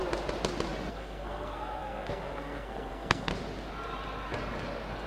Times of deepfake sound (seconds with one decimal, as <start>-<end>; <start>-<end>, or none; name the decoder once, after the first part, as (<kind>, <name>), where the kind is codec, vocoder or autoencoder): 0.9-3.3 (codec, SNAC)